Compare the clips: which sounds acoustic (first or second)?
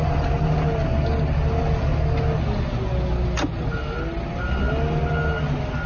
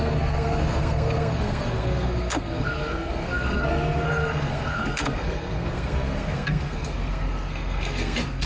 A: first